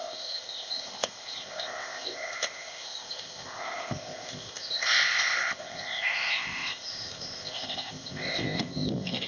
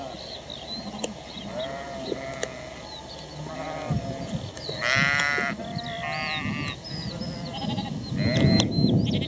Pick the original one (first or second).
second